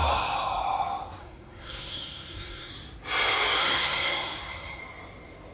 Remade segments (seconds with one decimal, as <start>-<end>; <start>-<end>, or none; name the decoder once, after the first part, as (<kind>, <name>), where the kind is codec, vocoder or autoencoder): 1.2-2.7 (codec, SNAC); 3.6-4.8